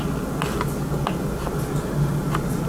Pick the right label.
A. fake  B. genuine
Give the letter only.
B